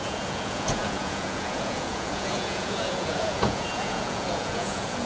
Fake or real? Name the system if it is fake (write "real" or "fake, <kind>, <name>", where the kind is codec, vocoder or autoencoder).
fake, vocoder, Vocos